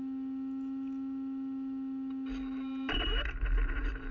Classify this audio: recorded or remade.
recorded